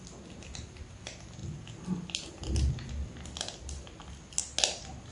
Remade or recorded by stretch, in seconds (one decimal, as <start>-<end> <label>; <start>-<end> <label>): 0.0-5.1 recorded